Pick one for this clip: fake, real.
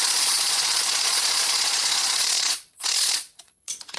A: fake